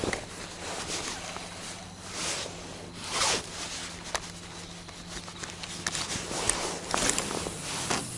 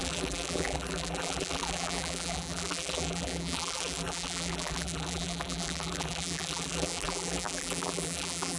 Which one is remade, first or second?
second